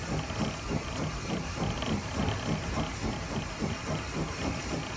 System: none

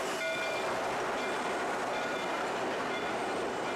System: none